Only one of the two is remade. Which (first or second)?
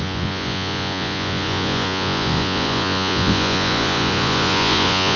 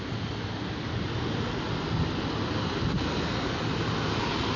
first